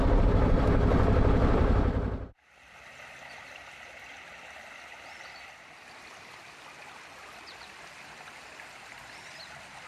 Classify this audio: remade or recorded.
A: remade